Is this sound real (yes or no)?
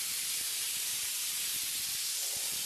yes